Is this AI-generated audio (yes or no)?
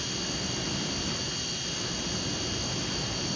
no